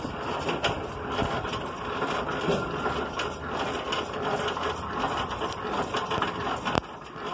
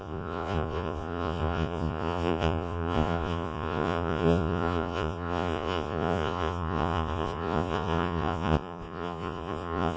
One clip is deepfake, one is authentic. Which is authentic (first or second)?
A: first